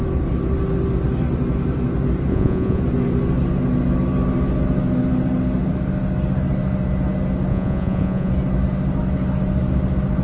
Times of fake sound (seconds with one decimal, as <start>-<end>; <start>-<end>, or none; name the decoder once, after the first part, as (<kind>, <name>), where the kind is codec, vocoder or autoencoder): 2.3-2.8 (vocoder, Vocos); 7.5-8.3